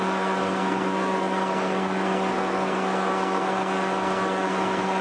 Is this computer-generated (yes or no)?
yes